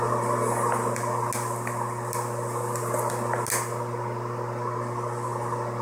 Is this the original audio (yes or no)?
yes